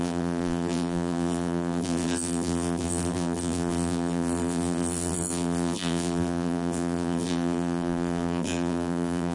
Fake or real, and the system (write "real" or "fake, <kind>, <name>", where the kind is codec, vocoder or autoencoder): fake, vocoder, BigVGAN v2